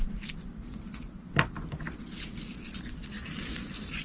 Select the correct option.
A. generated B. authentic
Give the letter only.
B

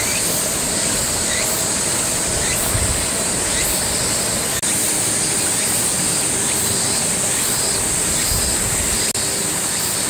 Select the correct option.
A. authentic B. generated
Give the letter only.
A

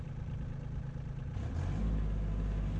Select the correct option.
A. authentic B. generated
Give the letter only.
A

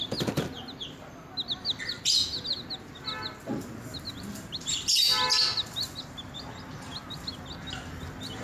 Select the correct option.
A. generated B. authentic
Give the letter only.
B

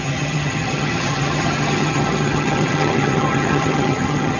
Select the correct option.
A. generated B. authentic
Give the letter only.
A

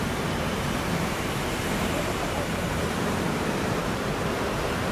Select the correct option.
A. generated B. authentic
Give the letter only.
A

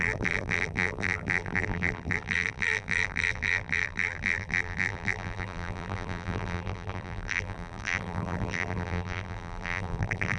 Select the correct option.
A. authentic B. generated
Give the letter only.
B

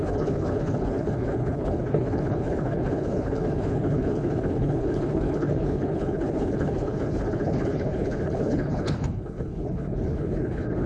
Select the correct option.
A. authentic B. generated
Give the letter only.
B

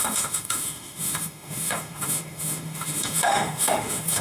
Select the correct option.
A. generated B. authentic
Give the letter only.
A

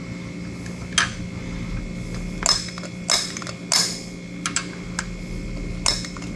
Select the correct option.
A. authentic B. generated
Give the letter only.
A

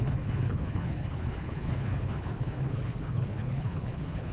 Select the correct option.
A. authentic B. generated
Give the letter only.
B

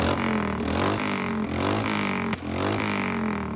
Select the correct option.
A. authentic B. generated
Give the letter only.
A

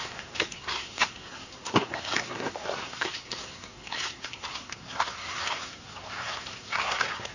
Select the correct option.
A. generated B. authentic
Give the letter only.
A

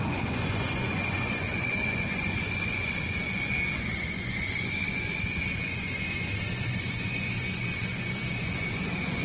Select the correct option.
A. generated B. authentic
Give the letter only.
A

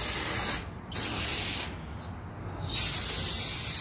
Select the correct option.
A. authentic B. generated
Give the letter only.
A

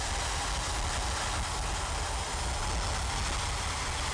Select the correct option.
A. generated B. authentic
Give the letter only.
B